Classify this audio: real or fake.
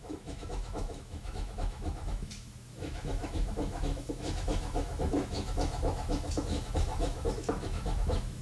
fake